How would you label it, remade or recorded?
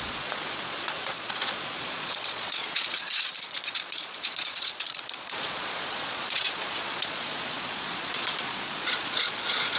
remade